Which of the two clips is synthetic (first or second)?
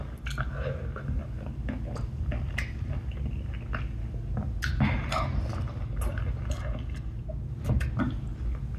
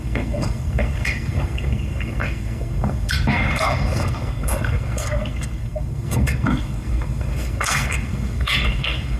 second